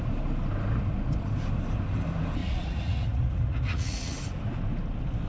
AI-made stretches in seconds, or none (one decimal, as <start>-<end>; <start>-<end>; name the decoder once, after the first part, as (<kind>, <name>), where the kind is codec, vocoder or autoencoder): 2.4-4.2 (vocoder, Vocos)

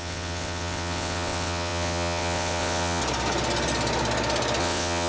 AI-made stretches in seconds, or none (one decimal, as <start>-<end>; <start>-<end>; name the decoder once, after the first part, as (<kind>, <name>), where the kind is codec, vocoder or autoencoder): 0.0-3.0 (vocoder, WaveNeXt); 4.6-5.1

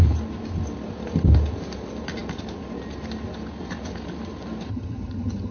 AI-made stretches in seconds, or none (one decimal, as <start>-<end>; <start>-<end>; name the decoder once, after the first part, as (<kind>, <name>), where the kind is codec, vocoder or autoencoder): 4.7-5.5 (vocoder, HiFi-GAN)